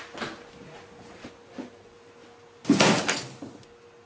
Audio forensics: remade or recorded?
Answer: recorded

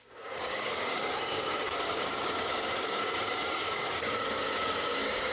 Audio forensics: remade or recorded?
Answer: remade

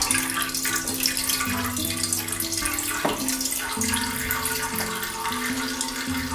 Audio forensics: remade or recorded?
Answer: recorded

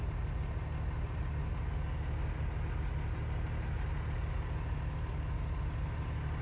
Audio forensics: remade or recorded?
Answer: recorded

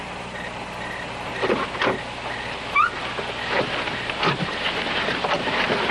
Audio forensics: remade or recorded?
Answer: recorded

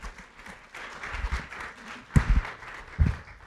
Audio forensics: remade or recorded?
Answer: recorded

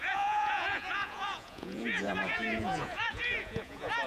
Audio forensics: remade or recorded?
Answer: remade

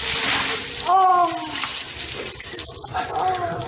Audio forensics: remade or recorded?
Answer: recorded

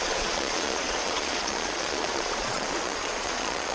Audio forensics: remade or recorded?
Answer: remade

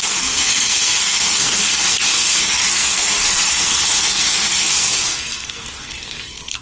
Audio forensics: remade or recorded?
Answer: remade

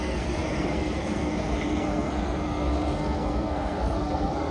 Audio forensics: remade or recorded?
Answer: remade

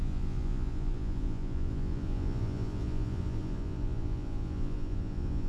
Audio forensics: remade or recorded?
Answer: remade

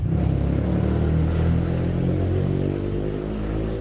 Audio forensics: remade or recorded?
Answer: recorded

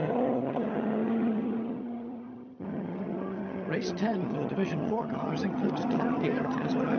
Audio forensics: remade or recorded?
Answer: remade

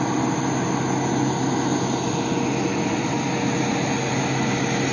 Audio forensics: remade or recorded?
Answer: recorded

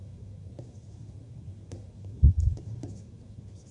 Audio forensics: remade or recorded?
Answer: remade